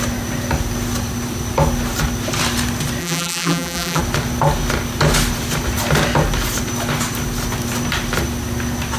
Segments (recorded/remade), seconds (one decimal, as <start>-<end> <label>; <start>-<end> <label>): 0.0-3.0 recorded; 3.0-4.0 remade; 4.0-9.0 recorded